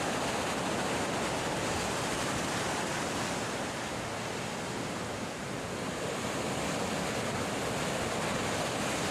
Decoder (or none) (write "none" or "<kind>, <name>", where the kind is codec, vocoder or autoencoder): none